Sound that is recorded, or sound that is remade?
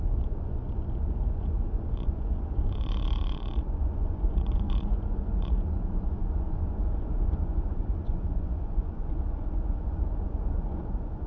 remade